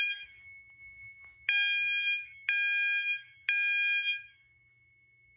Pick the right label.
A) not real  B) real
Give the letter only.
A